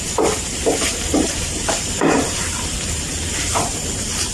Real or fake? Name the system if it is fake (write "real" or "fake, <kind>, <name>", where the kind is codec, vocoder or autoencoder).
fake, vocoder, BigVGAN v2